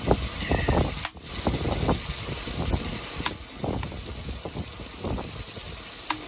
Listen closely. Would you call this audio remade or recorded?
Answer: recorded